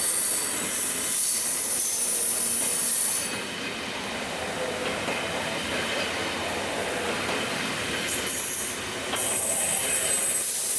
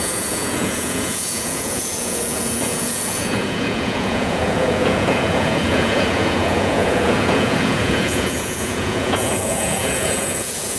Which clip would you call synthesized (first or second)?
second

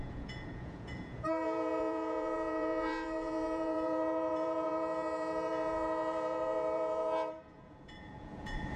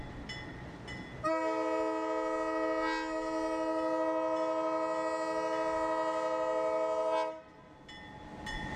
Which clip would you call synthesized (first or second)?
first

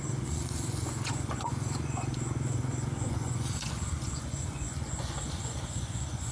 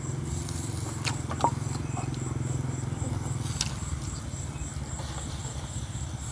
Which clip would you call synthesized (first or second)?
first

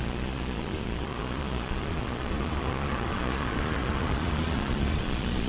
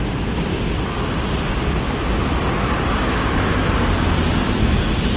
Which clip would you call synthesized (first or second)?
first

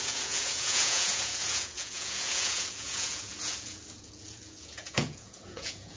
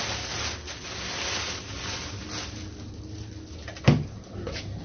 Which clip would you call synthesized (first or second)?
first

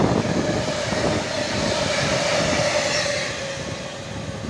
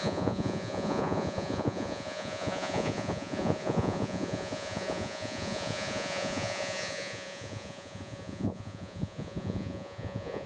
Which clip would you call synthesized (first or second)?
second